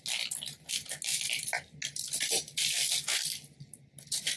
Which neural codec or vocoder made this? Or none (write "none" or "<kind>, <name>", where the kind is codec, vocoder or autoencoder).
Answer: none